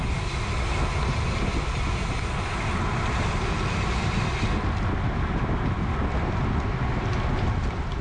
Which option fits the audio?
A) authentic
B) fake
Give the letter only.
A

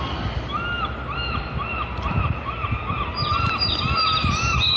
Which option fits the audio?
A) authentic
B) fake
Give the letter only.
B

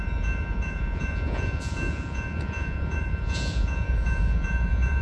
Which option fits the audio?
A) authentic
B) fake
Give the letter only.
B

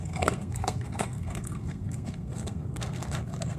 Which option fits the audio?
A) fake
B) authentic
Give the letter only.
A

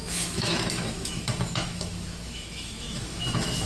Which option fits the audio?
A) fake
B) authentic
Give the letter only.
A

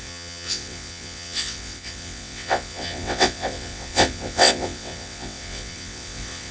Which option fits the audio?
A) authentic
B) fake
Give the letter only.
B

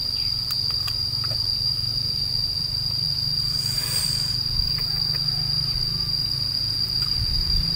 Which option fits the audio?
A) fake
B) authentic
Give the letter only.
A